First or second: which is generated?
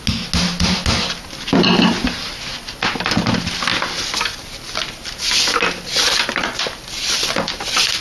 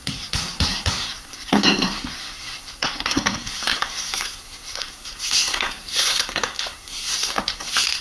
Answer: second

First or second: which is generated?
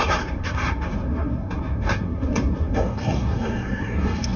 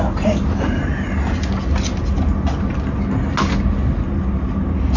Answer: first